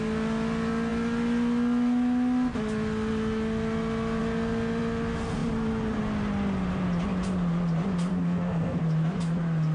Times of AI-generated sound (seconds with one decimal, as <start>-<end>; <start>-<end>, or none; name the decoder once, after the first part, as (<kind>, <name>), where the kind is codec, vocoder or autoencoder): 8.1-8.8 (codec, SNAC)